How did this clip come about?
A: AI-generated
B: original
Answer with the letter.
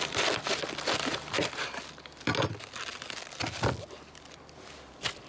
B